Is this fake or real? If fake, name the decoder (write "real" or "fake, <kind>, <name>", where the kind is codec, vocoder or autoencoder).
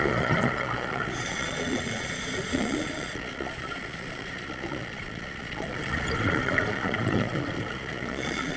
fake, vocoder, Vocos